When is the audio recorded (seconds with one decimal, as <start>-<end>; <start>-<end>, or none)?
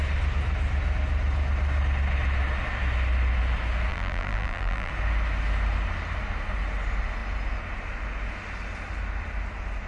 0.0-3.9; 4.9-9.9